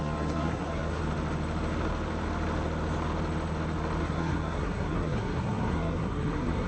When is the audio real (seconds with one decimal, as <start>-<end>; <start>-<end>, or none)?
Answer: 1.0-4.0